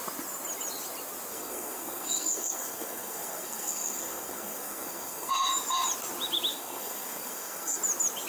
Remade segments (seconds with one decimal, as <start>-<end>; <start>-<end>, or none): 1.3-5.3; 6.5-7.8